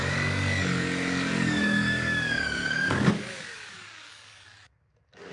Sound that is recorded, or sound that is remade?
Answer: remade